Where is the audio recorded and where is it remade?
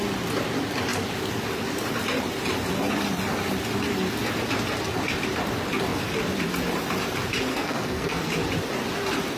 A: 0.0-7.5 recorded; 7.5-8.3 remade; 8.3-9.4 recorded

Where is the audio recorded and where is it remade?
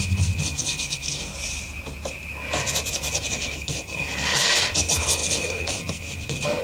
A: 0.0-1.3 remade; 1.3-2.9 recorded; 2.9-6.6 remade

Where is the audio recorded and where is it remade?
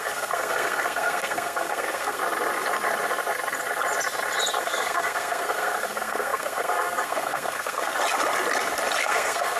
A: 0.0-2.2 remade; 2.2-4.6 recorded; 4.6-7.9 remade; 7.9-9.0 recorded; 9.0-9.6 remade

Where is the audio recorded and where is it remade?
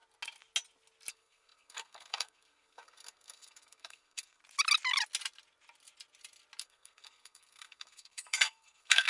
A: 0.0-1.1 recorded; 1.1-4.4 remade; 4.4-6.6 recorded; 6.6-9.1 remade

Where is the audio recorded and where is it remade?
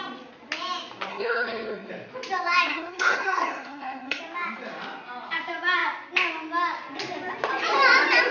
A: 0.0-1.1 recorded; 1.1-1.9 remade; 1.9-2.7 recorded; 2.7-4.2 remade; 4.2-8.3 recorded